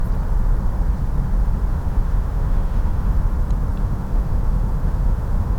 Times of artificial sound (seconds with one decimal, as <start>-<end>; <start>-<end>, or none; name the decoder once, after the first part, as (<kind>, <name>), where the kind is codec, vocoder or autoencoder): 1.7-3.2 (autoencoder, DAC-VAE); 3.8-5.6